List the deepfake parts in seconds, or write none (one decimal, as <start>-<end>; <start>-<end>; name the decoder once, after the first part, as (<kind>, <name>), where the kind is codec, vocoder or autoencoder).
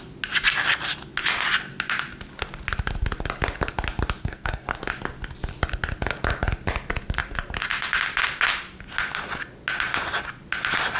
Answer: 4.2-4.8 (codec, SNAC)